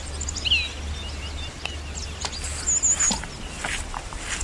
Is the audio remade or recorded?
recorded